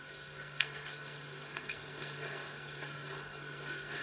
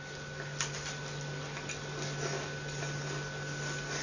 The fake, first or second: first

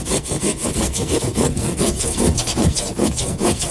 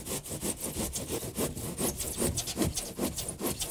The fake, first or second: first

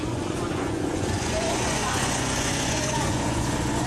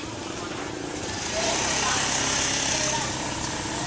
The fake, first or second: first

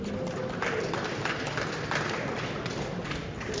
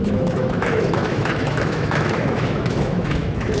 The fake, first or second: second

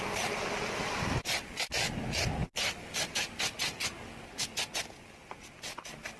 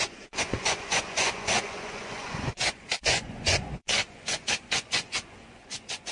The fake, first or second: second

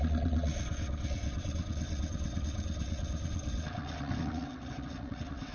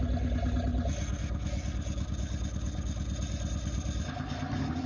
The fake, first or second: first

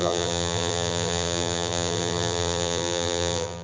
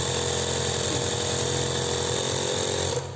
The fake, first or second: first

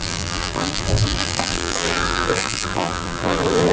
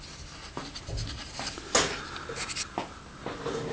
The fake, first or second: first